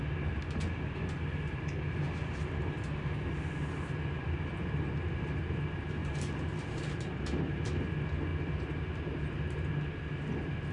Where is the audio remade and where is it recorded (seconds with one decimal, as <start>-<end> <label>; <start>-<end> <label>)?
0.0-6.0 recorded; 6.0-7.7 remade; 7.7-10.7 recorded